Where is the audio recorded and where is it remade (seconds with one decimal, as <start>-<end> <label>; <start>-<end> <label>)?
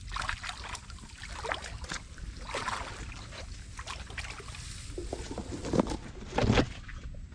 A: 0.0-7.3 recorded